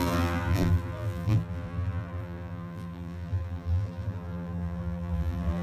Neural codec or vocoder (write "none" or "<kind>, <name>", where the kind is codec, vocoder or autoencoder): vocoder, BigVGAN v2